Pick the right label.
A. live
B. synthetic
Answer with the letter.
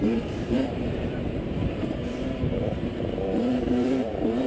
B